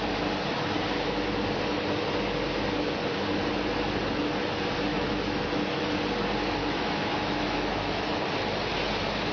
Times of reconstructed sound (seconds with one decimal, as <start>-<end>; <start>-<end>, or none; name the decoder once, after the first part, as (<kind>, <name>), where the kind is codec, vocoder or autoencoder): 4.9-5.9 (autoencoder, DAC-VAE); 6.6-8.2